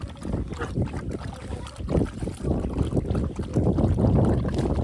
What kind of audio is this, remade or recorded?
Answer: recorded